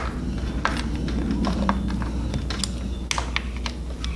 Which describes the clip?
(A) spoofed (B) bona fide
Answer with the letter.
B